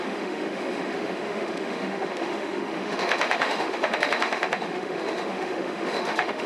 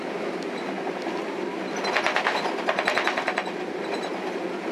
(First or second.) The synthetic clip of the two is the first